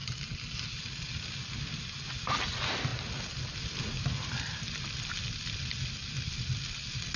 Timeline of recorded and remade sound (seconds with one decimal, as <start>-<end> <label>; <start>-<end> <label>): 0.0-7.2 recorded